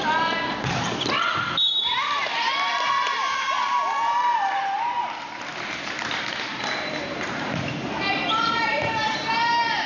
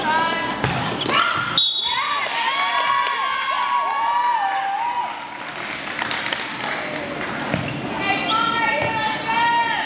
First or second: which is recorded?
second